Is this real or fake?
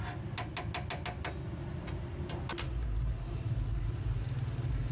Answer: real